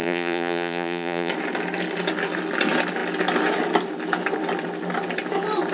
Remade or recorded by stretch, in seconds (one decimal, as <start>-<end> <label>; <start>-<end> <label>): 0.0-1.3 remade; 1.3-5.7 recorded